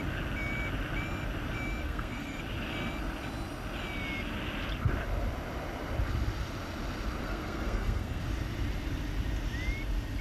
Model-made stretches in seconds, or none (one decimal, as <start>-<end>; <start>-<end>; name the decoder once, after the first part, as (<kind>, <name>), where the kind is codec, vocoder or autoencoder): 1.8-2.4 (codec, SNAC); 7.2-8.2